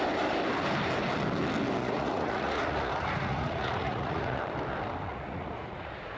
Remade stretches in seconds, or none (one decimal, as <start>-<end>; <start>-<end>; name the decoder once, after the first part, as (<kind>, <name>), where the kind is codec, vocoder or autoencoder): 1.8-4.4 (vocoder, Vocos); 5.1-6.2